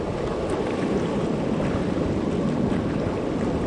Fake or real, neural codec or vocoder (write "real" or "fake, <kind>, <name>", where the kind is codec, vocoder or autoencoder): real